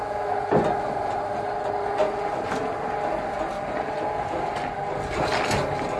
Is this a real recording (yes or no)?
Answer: yes